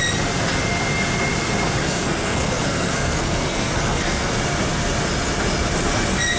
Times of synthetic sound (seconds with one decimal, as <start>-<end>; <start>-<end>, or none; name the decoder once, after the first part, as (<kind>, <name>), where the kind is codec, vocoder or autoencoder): 1.8-4.3 (codec, SNAC)

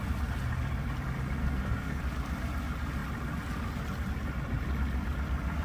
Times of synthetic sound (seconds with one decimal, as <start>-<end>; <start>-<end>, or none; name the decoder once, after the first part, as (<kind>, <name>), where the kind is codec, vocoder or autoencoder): 1.4-2.0 (codec, SNAC)

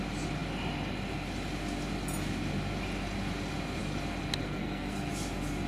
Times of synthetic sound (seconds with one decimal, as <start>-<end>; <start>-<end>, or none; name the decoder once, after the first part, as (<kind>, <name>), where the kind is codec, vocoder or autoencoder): 4.4-5.1 (codec, SNAC)

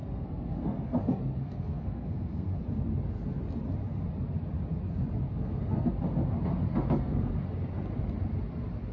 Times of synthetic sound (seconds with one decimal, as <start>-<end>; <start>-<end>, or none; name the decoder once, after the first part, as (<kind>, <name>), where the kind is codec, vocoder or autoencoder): 0.0-2.6 (codec, SNAC); 5.3-5.9; 6.7-7.3

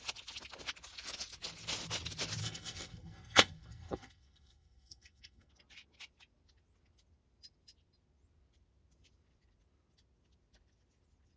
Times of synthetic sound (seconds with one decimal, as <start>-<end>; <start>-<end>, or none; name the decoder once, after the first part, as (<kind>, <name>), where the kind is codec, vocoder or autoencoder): 2.4-5.5 (codec, SNAC)

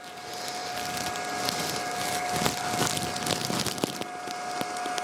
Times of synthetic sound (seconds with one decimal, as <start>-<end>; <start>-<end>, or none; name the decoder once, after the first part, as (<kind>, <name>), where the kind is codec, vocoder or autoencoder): none

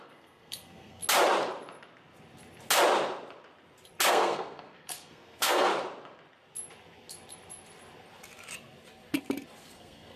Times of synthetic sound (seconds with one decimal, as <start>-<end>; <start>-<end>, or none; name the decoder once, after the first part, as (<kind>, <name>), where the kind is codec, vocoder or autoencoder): 0.0-1.0 (codec, SNAC); 4.1-5.7; 9.6-10.2

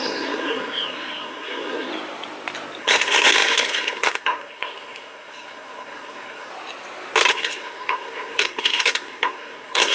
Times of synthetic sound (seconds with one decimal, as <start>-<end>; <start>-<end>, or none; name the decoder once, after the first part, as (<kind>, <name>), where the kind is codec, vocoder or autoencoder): 0.0-1.9 (codec, SNAC); 2.8-6.5; 7.3-9.9